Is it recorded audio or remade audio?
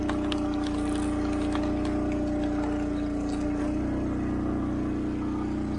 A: recorded